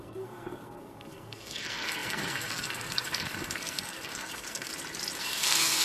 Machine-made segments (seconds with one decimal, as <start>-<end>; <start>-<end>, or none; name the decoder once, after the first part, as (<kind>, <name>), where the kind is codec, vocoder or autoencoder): 0.0-4.7 (codec, SNAC); 5.2-5.8